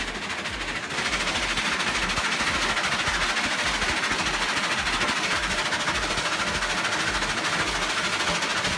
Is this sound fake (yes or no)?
no